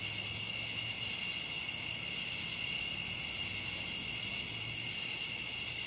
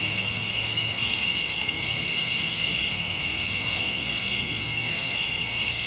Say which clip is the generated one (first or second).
second